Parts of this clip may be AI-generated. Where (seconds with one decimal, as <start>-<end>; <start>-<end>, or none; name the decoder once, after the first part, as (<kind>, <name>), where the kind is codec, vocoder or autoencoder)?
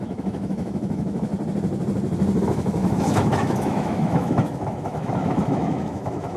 0.0-1.3 (autoencoder, DAC-VAE); 2.4-6.4